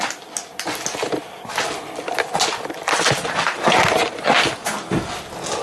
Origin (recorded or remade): recorded